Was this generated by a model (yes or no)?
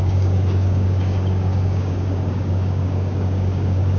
yes